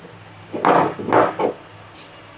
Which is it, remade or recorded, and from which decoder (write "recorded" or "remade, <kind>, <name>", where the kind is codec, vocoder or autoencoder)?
recorded